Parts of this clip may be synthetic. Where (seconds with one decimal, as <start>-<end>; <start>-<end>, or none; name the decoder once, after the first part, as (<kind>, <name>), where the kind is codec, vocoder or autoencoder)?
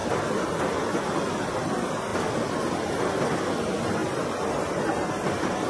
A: none